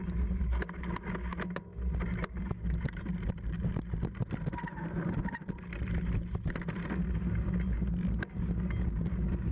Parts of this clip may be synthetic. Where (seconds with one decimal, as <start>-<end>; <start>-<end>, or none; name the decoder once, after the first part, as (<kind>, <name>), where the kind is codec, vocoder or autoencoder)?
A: none